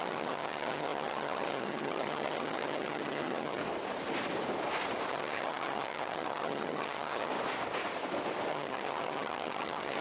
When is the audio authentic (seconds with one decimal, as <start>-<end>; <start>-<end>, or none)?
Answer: 3.6-5.1; 7.3-8.5